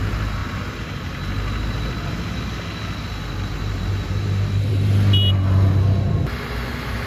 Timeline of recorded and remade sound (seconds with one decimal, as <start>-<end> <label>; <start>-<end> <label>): 0.0-7.1 recorded